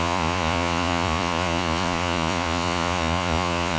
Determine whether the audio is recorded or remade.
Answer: remade